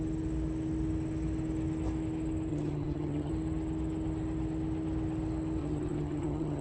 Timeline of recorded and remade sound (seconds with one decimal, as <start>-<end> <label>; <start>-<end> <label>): 0.0-2.5 recorded; 2.5-3.3 remade; 3.3-5.6 recorded; 5.6-6.6 remade